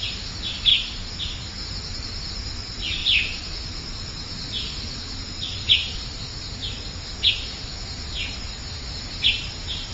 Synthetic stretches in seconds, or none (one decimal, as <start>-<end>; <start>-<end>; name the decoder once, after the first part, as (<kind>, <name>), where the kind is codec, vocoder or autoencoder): 0.0-6.3 (vocoder, BigVGAN v2); 7.3-7.7; 8.4-9.9